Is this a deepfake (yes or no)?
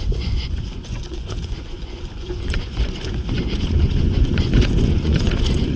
yes